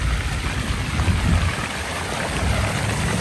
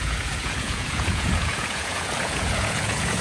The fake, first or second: second